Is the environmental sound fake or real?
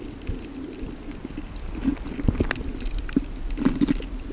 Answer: real